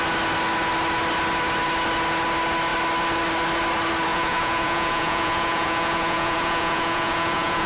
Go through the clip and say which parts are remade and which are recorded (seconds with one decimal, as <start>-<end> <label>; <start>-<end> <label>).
0.0-4.1 recorded; 4.1-7.7 remade